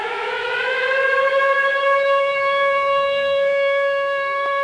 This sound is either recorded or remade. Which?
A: remade